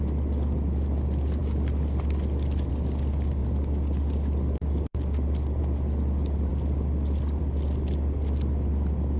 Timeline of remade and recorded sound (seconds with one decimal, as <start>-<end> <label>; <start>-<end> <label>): 0.0-9.2 recorded